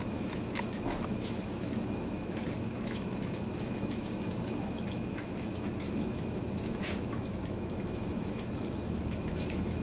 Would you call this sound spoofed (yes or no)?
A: yes